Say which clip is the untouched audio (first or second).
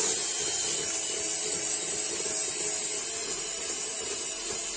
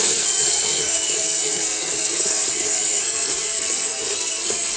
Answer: first